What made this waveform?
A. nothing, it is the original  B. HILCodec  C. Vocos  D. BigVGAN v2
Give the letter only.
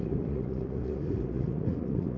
C